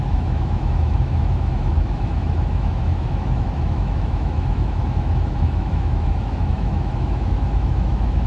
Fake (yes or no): yes